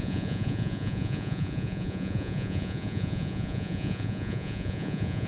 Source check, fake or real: fake